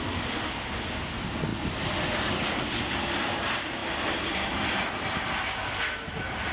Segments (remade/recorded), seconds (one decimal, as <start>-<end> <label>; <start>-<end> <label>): 0.0-6.5 recorded